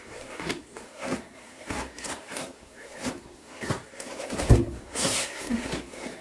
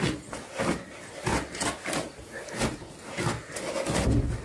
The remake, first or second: first